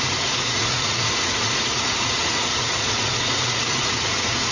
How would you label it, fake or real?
fake